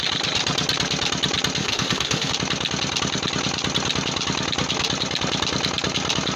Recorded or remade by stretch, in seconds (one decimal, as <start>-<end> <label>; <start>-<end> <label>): 0.0-1.6 recorded; 1.6-2.3 remade; 2.3-6.4 recorded